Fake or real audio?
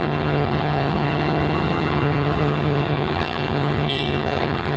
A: fake